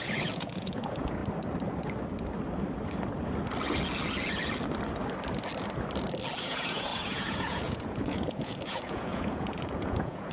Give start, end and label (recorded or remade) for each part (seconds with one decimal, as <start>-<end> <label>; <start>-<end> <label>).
0.0-1.2 remade; 1.2-6.4 recorded; 6.4-10.3 remade